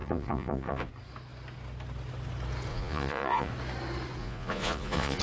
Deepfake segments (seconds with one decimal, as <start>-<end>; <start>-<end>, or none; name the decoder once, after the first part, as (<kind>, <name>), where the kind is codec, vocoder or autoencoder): 0.0-0.9 (vocoder, Vocos); 2.7-3.5; 4.2-5.2

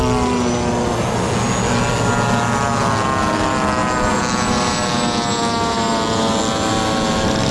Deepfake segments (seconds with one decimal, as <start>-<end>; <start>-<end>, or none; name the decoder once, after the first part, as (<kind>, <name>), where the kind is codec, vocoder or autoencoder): none

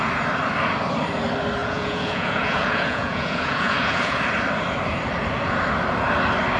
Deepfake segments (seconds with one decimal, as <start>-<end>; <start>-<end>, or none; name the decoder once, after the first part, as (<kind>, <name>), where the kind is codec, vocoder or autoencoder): 1.6-4.2 (vocoder, Vocos)

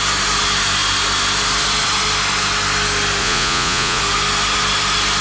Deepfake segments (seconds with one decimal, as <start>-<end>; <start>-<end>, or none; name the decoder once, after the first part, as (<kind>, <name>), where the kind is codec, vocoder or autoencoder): 3.2-4.0 (vocoder, Vocos)

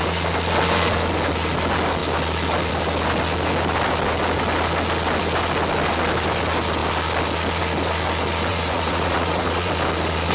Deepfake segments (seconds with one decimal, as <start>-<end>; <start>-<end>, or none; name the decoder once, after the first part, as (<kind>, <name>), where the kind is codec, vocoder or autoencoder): 8.5-9.7 (vocoder, Vocos)

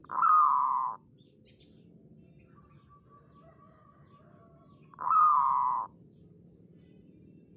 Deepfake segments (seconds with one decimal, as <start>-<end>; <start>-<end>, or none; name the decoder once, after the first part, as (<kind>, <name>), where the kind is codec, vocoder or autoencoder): none

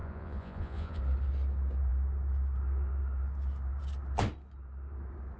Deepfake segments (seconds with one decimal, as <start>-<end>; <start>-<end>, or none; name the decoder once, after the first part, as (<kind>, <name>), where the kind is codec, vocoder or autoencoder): 0.0-1.0 (vocoder, Vocos)